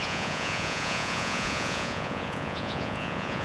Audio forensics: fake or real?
fake